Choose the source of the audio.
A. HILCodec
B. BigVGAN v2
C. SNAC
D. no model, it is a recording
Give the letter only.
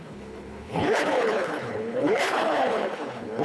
A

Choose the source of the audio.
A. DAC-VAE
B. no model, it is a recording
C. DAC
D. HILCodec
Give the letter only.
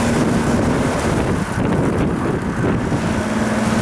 B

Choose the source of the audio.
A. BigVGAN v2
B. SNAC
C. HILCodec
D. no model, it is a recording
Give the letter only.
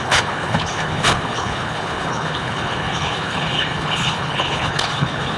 C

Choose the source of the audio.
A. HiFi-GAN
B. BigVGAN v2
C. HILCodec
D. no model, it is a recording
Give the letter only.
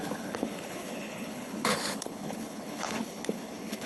C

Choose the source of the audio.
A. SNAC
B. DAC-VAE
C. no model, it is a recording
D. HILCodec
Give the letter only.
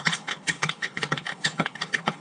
D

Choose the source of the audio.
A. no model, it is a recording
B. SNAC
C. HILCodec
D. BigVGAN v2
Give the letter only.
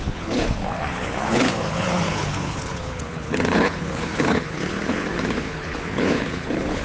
C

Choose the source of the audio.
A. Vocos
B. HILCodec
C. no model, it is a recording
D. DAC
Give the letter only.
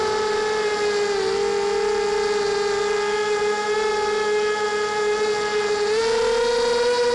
C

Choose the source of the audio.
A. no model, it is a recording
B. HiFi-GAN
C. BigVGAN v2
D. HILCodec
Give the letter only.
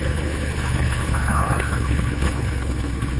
D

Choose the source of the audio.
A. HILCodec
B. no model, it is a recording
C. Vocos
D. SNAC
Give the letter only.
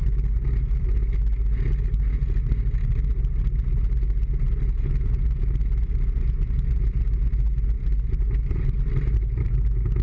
B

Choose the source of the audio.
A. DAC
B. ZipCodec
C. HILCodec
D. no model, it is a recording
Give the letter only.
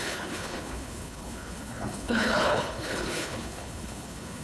C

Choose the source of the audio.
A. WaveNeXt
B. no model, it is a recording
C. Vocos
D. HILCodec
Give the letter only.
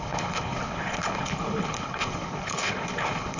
D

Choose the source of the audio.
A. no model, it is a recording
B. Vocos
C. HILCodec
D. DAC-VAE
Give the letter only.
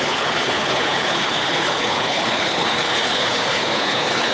C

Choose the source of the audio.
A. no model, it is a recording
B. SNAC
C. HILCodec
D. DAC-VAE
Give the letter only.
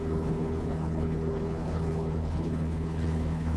C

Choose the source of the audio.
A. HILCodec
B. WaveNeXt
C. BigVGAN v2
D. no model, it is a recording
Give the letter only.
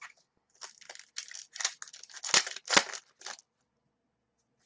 D